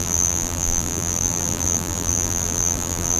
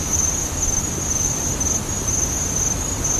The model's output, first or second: first